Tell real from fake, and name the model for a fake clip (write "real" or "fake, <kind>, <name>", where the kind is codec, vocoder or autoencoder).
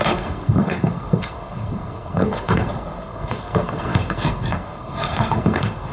fake, codec, SNAC